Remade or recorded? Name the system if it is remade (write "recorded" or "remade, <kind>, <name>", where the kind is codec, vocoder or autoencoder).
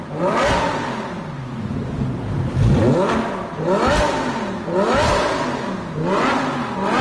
recorded